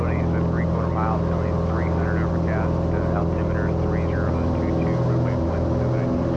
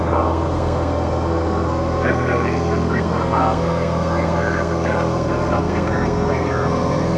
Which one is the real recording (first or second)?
first